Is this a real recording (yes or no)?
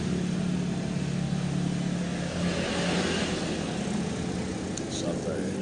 yes